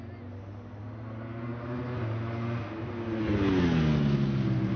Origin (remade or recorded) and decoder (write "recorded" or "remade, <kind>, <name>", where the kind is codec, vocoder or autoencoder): recorded